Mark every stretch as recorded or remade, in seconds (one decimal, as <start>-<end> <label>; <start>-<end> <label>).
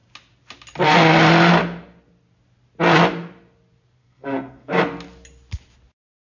0.0-4.0 recorded; 4.0-4.8 remade; 4.8-6.3 recorded